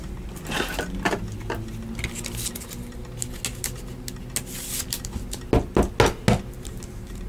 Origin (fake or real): real